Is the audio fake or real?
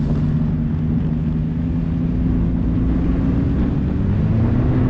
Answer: real